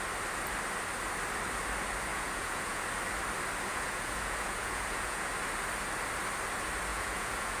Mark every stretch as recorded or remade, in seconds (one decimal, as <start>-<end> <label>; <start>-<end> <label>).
0.0-2.1 recorded; 2.1-2.8 remade; 2.8-3.7 recorded; 3.7-5.3 remade; 5.3-6.9 recorded; 6.9-7.6 remade